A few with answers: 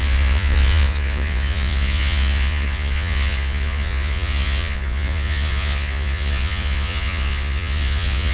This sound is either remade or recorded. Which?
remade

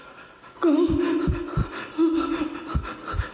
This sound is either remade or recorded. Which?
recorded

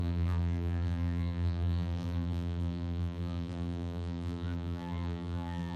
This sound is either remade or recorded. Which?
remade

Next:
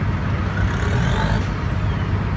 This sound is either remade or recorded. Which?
recorded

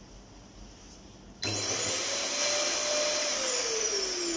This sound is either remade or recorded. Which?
recorded